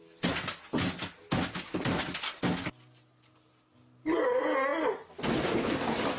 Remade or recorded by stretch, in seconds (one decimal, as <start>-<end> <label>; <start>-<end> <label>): 0.0-6.2 recorded